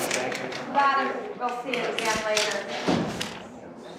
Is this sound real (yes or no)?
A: yes